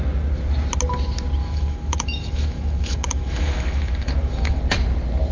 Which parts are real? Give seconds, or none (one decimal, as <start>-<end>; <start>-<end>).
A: 0.0-1.4; 4.6-5.3

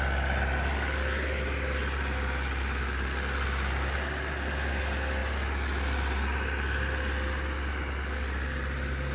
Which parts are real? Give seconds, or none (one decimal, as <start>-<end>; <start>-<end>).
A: 0.0-9.1

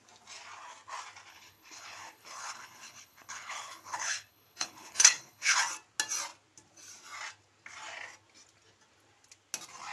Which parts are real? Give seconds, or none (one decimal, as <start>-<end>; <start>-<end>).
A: 0.0-1.3; 5.6-9.9

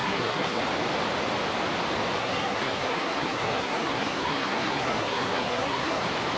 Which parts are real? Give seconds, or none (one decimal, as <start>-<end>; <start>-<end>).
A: 0.6-2.2; 6.0-6.4

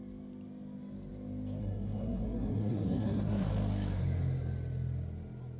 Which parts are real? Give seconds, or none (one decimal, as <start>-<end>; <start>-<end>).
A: 0.0-1.6; 3.5-5.6

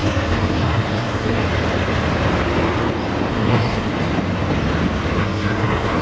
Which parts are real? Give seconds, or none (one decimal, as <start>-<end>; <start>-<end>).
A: 1.4-3.3; 3.9-5.2

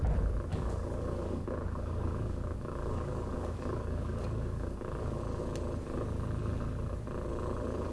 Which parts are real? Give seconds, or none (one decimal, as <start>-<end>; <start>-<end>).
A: 0.0-0.5; 5.2-7.9

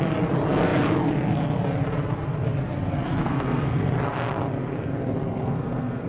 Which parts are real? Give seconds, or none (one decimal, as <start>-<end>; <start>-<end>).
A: 0.0-3.2; 3.9-5.3